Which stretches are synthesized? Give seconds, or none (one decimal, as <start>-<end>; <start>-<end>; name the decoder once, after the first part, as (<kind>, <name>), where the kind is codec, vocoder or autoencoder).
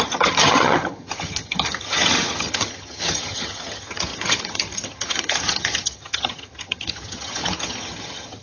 0.0-8.4 (vocoder, HiFi-GAN)